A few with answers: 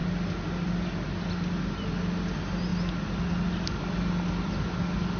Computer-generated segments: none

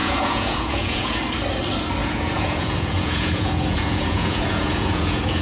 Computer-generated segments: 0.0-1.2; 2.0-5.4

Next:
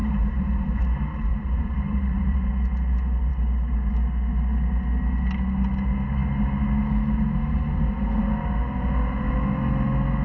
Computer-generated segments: 0.0-0.8; 1.3-2.5

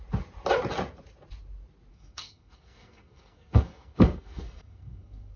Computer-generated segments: 1.9-5.4

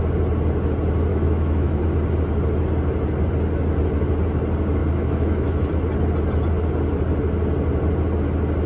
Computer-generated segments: 1.1-1.8; 4.8-5.7

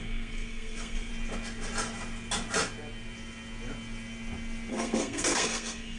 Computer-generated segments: 0.0-1.1; 4.7-6.0

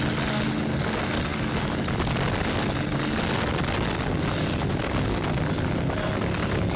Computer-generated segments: none

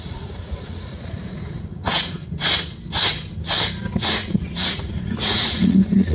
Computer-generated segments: 0.0-2.2; 4.0-6.1